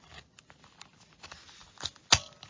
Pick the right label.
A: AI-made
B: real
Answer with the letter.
B